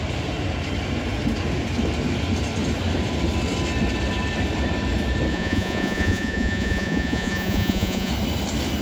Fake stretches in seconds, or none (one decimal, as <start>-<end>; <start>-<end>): 5.3-8.1